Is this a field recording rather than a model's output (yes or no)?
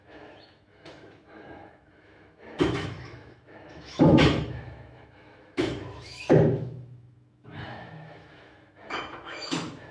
no